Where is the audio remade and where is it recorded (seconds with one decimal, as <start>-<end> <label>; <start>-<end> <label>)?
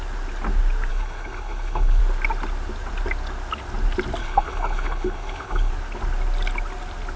0.0-0.9 recorded; 0.9-2.0 remade; 2.0-4.2 recorded; 4.2-5.7 remade; 5.7-7.2 recorded